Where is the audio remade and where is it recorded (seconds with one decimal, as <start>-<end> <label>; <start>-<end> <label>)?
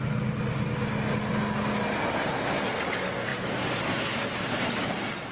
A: 0.0-5.3 recorded